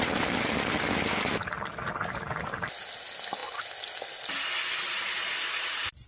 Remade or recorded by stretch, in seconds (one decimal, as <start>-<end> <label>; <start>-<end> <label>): 0.0-6.1 recorded